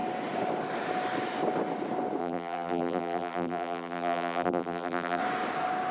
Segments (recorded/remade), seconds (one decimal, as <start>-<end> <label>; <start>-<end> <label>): 0.0-2.2 recorded; 2.2-5.2 remade; 5.2-5.9 recorded

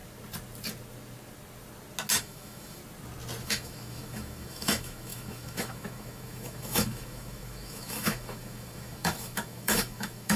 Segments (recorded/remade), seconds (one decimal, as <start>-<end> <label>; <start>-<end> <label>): 0.0-2.2 recorded; 2.2-2.8 remade; 2.8-3.4 recorded; 3.4-10.4 remade

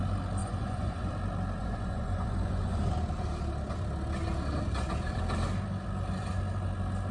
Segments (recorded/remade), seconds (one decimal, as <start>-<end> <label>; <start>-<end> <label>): 0.0-0.4 recorded; 0.4-1.1 remade; 1.1-1.6 recorded; 1.6-2.8 remade; 2.8-7.1 recorded

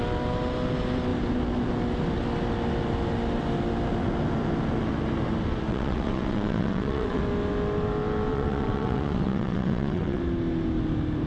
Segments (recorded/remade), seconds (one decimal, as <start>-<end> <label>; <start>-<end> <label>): 0.0-5.7 recorded; 5.7-7.2 remade; 7.2-8.3 recorded; 8.3-10.2 remade; 10.2-11.3 recorded

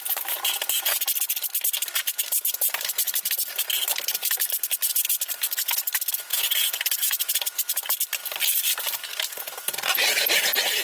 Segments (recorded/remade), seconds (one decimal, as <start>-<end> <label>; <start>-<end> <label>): 0.0-6.3 recorded; 6.3-7.3 remade; 7.3-10.8 recorded

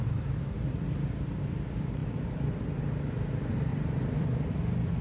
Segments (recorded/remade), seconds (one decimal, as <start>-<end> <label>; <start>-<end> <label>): 0.0-2.0 recorded; 2.0-2.8 remade; 2.8-3.7 recorded; 3.7-4.5 remade; 4.5-5.0 recorded

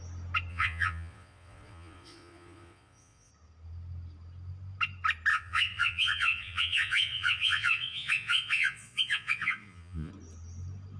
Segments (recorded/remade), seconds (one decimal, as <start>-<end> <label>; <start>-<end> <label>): 0.0-0.5 recorded; 0.5-3.3 remade; 3.3-5.3 recorded; 5.3-10.1 remade; 10.1-11.0 recorded

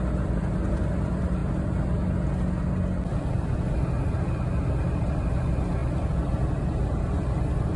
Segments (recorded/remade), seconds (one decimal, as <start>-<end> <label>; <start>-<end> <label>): 0.0-1.4 remade; 1.4-4.3 recorded; 4.3-7.8 remade